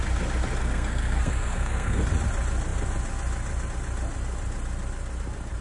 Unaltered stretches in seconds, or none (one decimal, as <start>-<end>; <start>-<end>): 0.0-0.6; 2.0-5.6